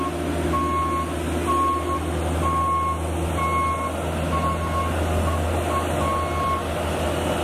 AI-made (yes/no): no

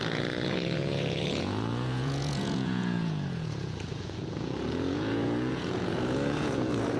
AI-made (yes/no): yes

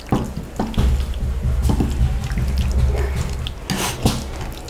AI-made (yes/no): no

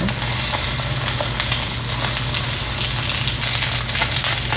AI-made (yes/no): no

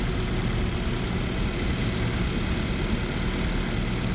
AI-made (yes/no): no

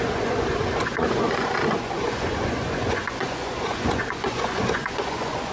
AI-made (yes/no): yes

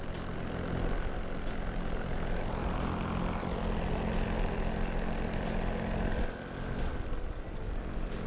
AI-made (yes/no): no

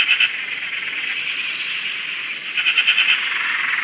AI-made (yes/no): no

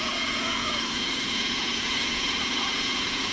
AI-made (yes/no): yes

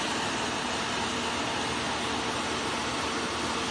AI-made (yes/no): no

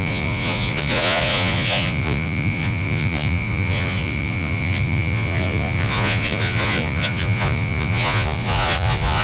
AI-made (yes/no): yes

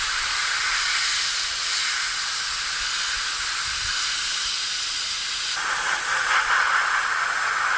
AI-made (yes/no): no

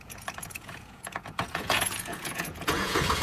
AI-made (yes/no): yes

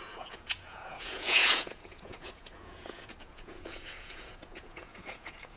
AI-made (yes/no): yes